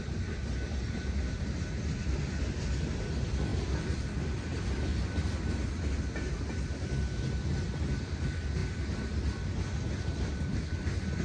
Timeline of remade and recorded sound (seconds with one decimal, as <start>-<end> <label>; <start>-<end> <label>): 0.0-3.5 recorded; 3.5-4.8 remade; 4.8-11.2 recorded